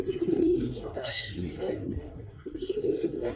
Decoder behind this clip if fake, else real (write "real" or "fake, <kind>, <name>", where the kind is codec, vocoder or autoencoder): fake, codec, SNAC